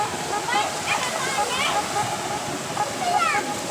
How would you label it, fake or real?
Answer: real